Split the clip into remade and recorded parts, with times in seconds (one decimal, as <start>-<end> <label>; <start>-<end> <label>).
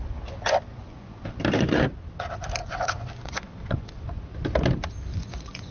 0.0-0.7 recorded; 0.7-1.4 remade; 1.4-2.6 recorded; 2.6-4.2 remade; 4.2-5.1 recorded; 5.1-5.7 remade